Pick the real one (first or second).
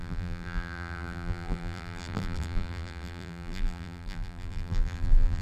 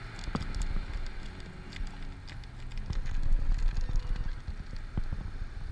second